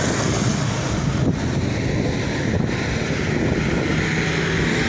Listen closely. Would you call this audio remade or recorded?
recorded